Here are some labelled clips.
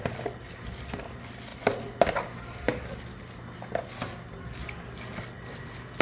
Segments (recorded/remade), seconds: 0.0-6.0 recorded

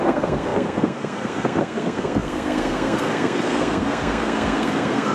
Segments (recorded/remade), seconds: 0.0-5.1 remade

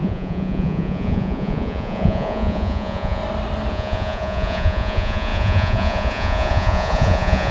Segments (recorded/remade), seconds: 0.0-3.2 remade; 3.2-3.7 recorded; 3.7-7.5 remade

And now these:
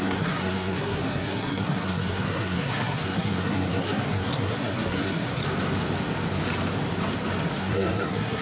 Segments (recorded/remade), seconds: 0.0-5.4 remade; 5.4-7.6 recorded; 7.6-8.4 remade

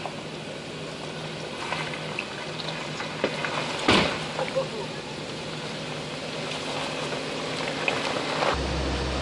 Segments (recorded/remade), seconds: 0.0-9.2 recorded

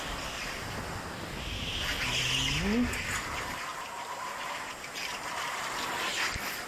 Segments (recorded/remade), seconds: 0.0-3.7 recorded; 3.7-5.3 remade; 5.3-6.7 recorded

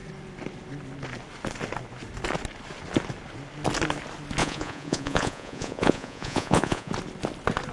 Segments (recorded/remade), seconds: 0.0-4.4 recorded; 4.4-6.9 remade; 6.9-7.7 recorded

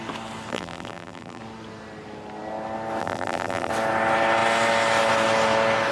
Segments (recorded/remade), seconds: 0.0-0.5 recorded; 0.5-1.4 remade; 1.4-3.0 recorded; 3.0-3.7 remade; 3.7-5.9 recorded